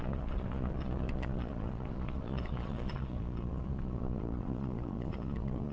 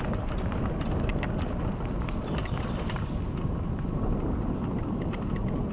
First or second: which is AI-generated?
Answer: first